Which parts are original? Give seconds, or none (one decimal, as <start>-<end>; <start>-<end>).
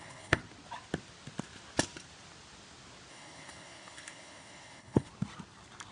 0.4-3.1; 5.1-5.9